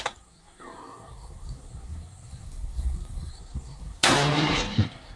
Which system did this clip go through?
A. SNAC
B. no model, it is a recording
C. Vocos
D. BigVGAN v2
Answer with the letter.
A